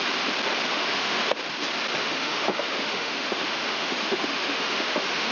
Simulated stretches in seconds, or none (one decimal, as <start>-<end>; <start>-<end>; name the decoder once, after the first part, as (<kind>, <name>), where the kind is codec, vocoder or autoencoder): 0.7-1.3 (autoencoder, DAC-VAE); 2.0-5.3